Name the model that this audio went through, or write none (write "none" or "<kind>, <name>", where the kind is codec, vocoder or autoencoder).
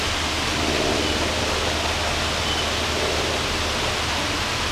none